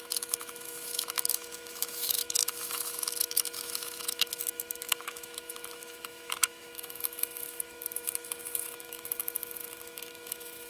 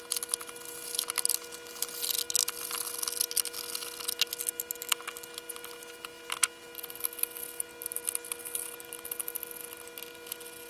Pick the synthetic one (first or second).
first